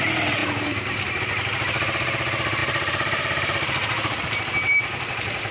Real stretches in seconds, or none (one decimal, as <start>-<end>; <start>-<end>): 0.0-0.4; 1.2-2.6; 4.8-5.5